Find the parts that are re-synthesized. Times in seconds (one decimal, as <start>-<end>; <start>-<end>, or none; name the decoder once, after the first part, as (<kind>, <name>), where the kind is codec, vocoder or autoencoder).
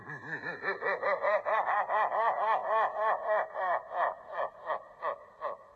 none